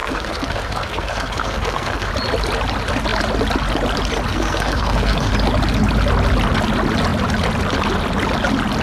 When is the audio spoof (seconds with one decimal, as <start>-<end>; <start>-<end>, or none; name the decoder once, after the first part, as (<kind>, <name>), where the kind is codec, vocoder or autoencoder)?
0.0-2.1 (codec, SNAC); 4.3-5.3